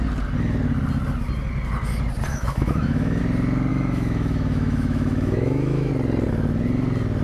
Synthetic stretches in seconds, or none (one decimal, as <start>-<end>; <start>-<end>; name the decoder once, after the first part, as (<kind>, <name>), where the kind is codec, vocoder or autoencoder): 2.3-3.2 (autoencoder, DAC-VAE); 3.7-5.9